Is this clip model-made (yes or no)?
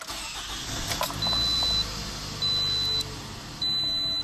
no